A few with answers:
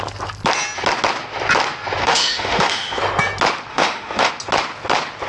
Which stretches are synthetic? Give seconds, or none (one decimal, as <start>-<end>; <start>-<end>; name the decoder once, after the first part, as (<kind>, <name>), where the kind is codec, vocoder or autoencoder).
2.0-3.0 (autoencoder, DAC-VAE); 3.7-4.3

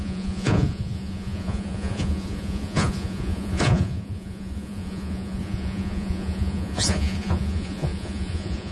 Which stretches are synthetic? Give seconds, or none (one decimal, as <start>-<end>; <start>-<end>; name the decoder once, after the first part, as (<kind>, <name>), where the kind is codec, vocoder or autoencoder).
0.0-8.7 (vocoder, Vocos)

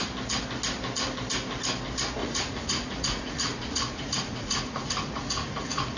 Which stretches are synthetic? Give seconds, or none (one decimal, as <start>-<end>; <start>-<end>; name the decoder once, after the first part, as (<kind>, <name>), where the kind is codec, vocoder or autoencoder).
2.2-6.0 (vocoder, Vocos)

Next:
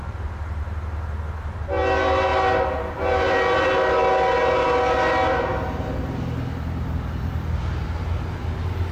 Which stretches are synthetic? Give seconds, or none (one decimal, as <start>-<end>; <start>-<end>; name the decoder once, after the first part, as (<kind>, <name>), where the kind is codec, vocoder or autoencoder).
none

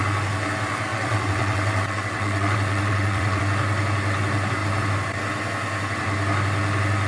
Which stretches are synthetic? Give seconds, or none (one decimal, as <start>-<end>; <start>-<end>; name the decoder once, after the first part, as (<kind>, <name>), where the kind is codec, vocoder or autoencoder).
0.9-3.4 (vocoder, WaveNeXt)